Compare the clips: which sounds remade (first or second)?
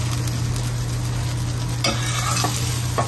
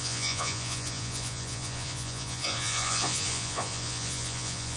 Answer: second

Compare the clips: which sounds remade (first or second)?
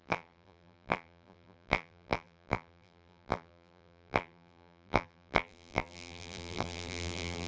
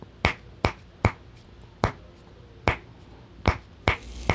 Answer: first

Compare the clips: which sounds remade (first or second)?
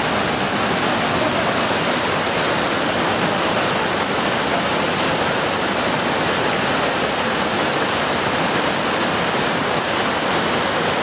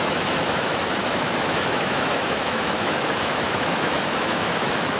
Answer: second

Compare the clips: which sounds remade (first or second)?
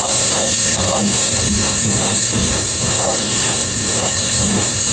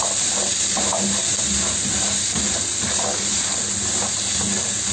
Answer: first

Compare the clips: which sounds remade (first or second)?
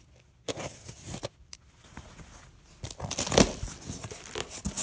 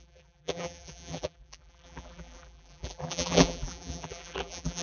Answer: second